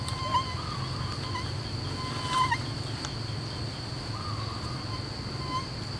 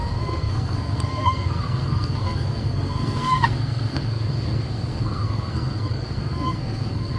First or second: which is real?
first